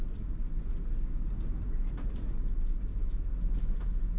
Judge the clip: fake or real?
real